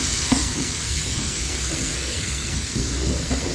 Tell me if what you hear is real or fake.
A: fake